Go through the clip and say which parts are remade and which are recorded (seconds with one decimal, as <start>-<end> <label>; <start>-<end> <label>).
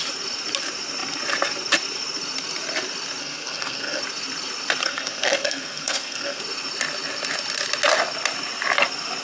0.0-3.2 recorded; 3.2-4.0 remade; 4.0-4.8 recorded; 4.8-6.4 remade; 6.4-9.2 recorded